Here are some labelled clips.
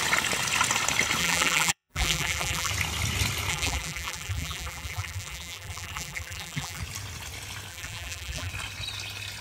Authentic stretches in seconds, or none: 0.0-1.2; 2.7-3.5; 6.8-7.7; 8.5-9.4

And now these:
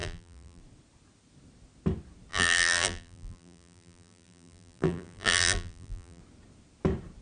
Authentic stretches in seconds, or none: 0.6-2.3; 6.2-7.2

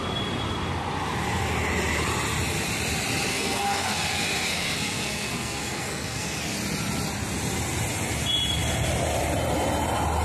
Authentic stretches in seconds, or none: 0.0-3.3; 6.4-10.2